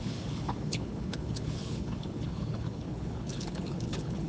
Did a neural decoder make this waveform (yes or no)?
yes